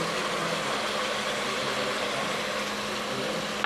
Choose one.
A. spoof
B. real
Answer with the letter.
B